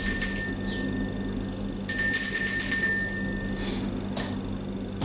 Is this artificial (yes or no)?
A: no